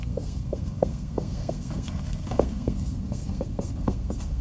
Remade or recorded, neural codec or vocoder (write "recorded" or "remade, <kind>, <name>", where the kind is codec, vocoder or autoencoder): remade, codec, SNAC